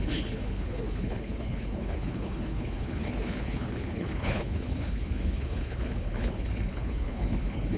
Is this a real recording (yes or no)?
no